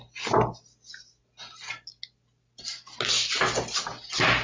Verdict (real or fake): real